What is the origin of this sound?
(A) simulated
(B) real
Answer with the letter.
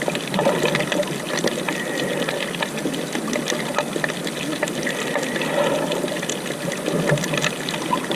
B